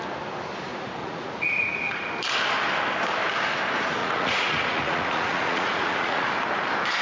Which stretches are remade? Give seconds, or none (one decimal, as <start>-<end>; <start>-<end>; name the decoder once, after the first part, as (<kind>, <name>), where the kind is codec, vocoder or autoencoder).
1.0-2.0 (vocoder, Vocos); 4.0-6.3